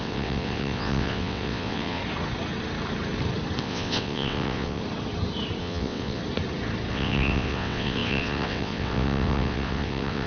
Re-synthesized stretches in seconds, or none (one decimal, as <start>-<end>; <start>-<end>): 0.0-2.0; 3.6-4.8; 5.6-6.2; 6.9-10.3

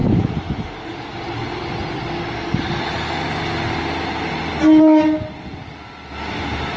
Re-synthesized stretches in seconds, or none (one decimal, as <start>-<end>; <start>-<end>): none

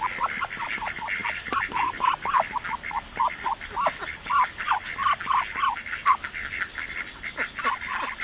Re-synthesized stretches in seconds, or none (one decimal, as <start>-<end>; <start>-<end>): none

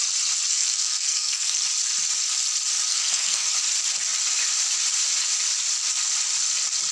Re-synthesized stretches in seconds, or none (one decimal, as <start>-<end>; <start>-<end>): 0.5-1.6; 2.9-3.5

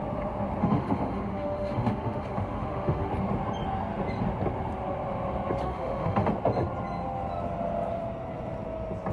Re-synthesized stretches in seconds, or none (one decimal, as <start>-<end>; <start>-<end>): 0.6-3.1; 5.6-6.3

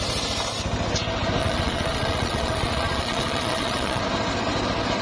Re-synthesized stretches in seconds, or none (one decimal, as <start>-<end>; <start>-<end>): 1.4-4.0

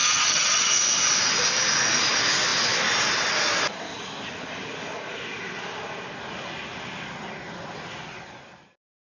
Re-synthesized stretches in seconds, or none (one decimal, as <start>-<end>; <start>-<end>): 0.0-0.7

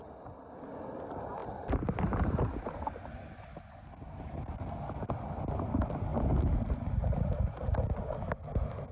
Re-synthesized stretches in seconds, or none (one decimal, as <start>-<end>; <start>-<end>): none